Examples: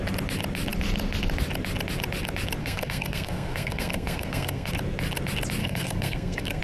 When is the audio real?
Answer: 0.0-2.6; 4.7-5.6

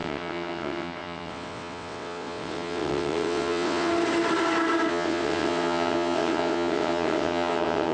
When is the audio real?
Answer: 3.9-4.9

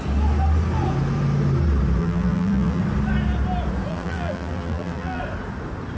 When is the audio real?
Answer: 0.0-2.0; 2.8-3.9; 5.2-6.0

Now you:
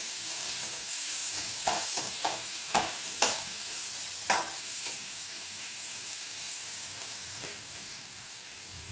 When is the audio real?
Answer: 3.9-4.6